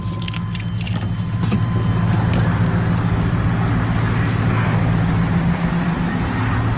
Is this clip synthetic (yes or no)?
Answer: no